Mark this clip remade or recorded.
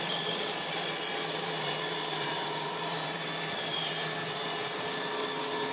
remade